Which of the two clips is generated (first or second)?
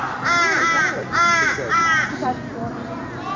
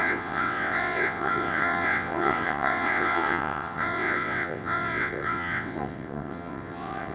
second